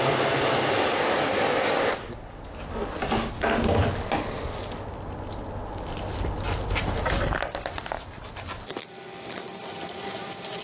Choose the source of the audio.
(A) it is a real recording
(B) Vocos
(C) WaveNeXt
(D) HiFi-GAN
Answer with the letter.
A